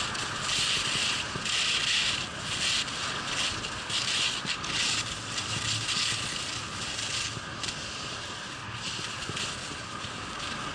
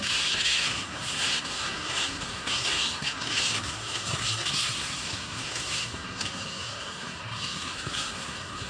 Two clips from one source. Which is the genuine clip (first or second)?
first